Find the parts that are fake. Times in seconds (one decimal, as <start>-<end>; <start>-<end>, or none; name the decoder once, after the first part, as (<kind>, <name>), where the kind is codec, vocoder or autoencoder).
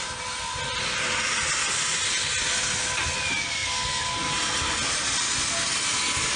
none